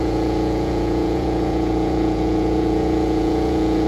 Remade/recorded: remade